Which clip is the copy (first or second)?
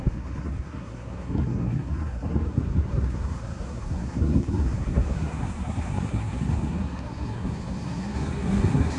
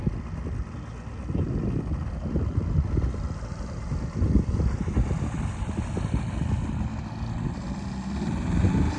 first